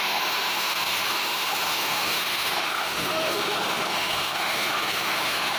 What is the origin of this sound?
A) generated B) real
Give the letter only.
A